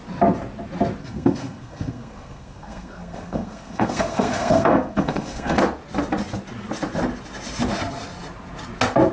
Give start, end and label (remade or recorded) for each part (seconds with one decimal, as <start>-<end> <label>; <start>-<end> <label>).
0.0-1.0 recorded; 1.0-5.6 remade; 5.6-9.1 recorded